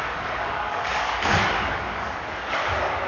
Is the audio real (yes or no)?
no